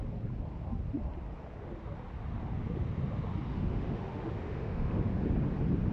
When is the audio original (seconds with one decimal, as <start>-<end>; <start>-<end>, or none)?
0.0-3.5; 5.2-5.9